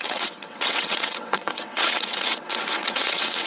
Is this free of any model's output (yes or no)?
no